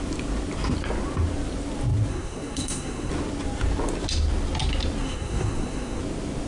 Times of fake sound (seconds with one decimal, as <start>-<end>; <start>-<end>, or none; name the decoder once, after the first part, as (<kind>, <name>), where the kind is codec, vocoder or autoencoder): 2.1-3.1 (codec, SNAC); 5.0-6.0